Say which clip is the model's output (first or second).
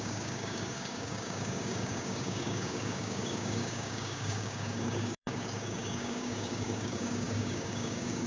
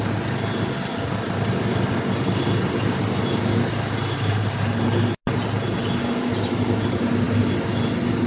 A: first